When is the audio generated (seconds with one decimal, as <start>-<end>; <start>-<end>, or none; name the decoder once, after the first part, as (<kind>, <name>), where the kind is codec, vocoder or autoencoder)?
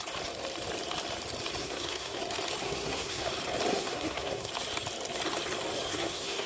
1.6-2.2 (codec, SNAC); 2.6-3.3; 3.7-4.5; 5.9-6.5